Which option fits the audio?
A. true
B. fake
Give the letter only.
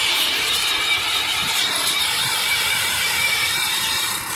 B